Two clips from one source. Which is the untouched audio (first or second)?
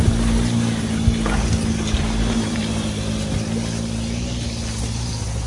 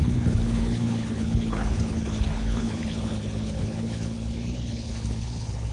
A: first